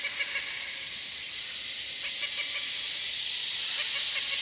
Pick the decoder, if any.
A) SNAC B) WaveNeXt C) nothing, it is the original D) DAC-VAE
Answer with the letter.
C